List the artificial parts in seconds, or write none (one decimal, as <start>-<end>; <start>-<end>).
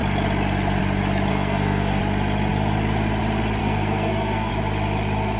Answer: 1.3-2.0; 3.6-4.5